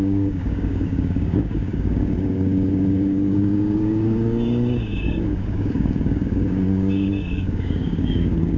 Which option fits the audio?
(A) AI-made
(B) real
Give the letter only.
A